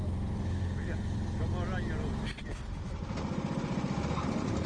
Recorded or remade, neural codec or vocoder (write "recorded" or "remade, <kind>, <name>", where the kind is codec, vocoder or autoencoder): recorded